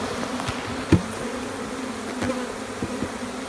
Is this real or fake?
real